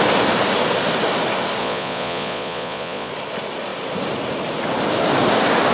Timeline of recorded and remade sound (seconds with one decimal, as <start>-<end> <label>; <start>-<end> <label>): 0.0-1.6 recorded; 1.6-3.1 remade; 3.1-5.7 recorded